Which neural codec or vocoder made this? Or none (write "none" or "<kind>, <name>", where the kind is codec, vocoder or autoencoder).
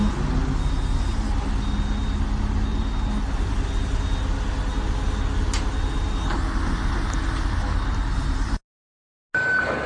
none